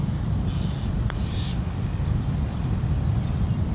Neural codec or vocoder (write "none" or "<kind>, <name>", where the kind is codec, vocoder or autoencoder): none